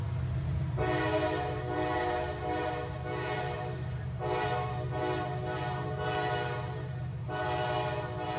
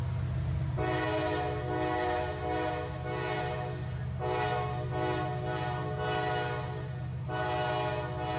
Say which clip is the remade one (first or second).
first